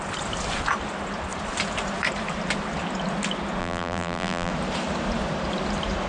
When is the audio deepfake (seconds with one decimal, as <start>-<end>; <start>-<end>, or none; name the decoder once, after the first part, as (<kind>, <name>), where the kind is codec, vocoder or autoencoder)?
3.6-4.5 (vocoder, BigVGAN v2)